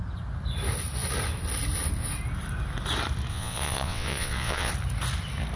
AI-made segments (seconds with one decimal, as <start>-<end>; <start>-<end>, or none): 3.3-4.7